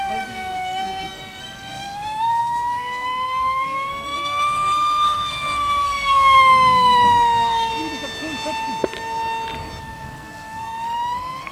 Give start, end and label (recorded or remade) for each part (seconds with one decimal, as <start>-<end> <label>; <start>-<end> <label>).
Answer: 0.0-7.7 remade; 7.7-9.8 recorded; 9.8-11.5 remade